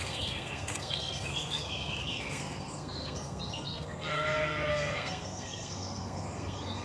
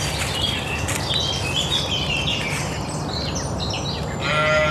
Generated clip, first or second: first